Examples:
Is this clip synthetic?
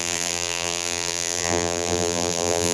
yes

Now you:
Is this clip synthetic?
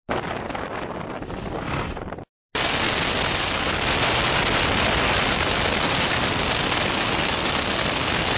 no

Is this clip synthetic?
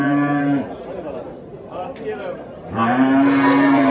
yes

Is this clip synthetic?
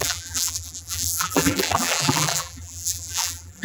yes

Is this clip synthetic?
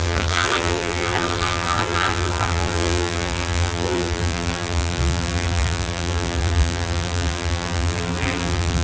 yes